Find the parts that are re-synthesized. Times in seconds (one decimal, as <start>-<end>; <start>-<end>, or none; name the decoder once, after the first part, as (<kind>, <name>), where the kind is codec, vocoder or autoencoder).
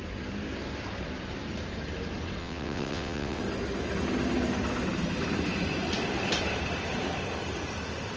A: 2.4-3.4 (vocoder, WaveNeXt)